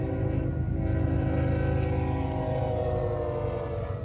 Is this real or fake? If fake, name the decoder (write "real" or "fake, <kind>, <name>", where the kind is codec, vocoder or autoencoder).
real